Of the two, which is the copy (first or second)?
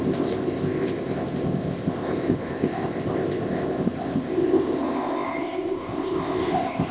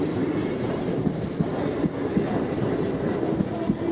first